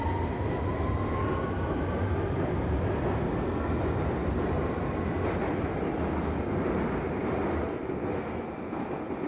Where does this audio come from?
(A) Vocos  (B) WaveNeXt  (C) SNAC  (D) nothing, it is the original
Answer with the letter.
D